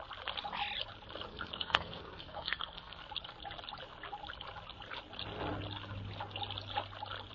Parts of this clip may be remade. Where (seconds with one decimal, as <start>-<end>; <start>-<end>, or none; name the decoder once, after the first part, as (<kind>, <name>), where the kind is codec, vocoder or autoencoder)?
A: 1.3-3.0 (codec, SNAC)